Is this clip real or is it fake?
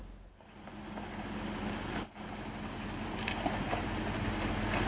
real